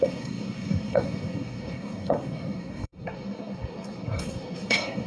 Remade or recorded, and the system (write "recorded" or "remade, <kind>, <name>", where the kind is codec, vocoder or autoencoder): remade, codec, SNAC